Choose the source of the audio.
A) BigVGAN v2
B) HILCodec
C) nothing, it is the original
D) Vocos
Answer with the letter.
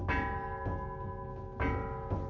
C